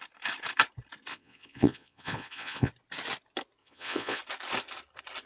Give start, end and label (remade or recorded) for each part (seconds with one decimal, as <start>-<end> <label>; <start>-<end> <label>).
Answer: 0.0-1.1 recorded; 1.1-2.7 remade; 2.7-3.6 recorded; 3.6-4.2 remade; 4.2-5.3 recorded